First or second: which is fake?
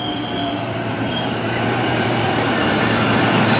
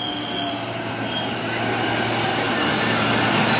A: first